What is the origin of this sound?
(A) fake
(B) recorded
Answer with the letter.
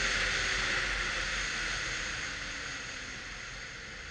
B